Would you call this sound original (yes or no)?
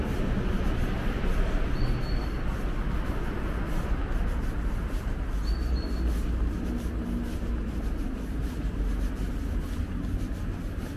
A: yes